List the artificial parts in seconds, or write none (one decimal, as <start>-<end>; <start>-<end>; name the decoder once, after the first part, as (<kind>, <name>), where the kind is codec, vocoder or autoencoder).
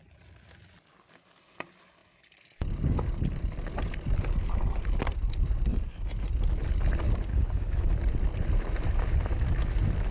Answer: 7.3-7.9 (codec, HILCodec)